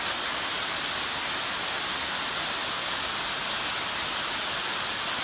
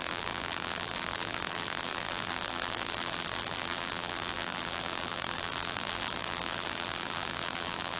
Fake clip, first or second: second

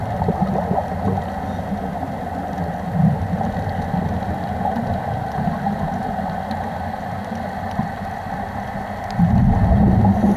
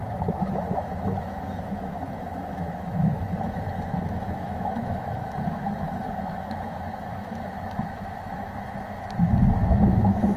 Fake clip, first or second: second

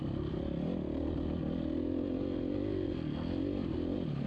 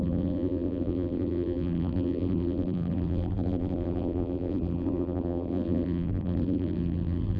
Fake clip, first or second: second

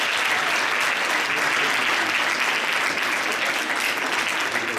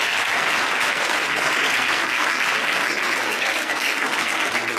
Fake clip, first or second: second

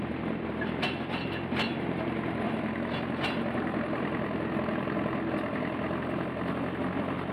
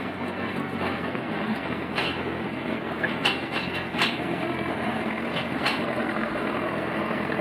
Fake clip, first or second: second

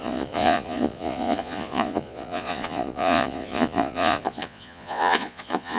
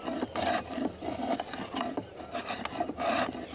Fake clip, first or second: first